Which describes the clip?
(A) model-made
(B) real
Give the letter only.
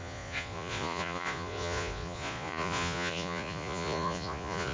A